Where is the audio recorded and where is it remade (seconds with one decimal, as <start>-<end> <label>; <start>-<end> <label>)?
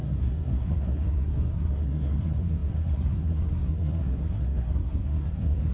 0.0-5.7 remade